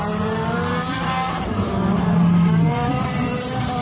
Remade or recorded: remade